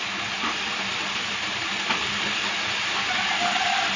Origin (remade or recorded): recorded